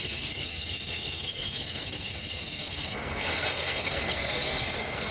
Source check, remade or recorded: remade